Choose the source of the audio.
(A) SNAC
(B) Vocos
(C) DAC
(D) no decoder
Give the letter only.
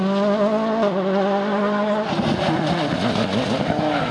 D